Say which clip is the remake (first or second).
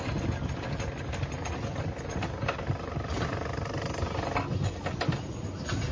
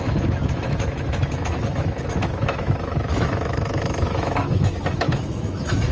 second